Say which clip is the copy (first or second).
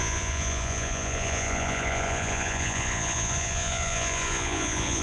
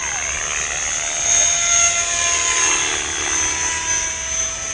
first